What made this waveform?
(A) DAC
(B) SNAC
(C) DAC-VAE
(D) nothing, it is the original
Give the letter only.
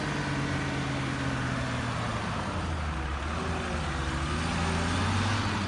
D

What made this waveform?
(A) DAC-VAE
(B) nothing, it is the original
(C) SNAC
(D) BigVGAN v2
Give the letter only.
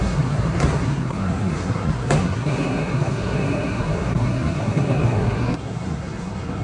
C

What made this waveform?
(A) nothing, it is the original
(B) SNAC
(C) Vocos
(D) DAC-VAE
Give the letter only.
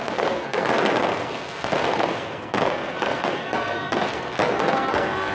B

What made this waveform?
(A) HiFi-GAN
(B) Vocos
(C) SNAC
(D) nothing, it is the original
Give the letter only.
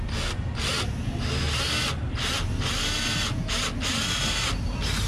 D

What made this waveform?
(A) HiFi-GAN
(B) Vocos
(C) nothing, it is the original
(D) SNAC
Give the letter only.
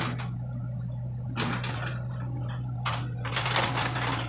C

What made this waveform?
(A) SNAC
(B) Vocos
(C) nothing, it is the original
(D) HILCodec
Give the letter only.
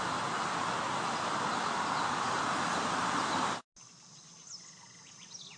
C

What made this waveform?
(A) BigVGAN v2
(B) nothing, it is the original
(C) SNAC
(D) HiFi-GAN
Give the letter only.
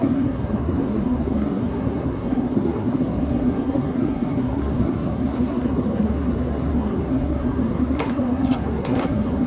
C